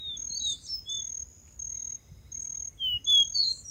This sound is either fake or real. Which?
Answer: real